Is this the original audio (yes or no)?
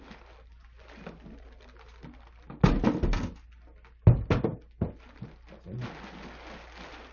yes